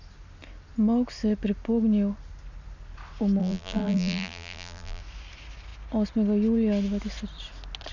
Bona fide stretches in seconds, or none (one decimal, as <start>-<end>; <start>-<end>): 0.0-3.4; 5.0-7.9